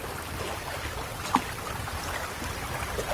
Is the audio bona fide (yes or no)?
yes